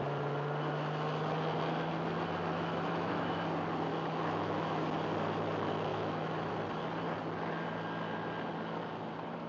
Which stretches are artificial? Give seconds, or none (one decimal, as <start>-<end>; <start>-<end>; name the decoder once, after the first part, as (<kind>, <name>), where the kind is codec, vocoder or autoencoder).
2.5-3.4 (autoencoder, DAC-VAE); 3.9-4.8; 5.9-6.5